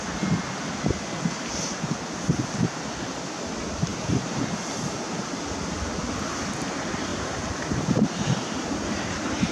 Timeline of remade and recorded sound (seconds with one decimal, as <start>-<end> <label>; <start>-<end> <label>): 0.0-7.1 recorded; 7.1-9.5 remade